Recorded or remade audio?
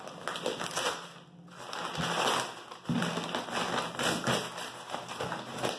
recorded